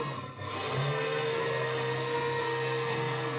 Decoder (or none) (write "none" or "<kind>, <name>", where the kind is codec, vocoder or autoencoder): codec, SNAC